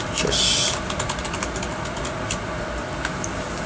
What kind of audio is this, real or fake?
real